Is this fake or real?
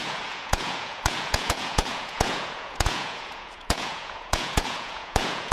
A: fake